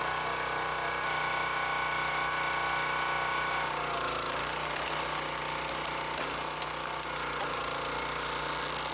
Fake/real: real